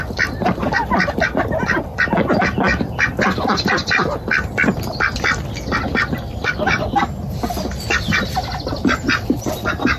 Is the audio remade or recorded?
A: recorded